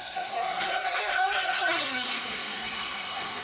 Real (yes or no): no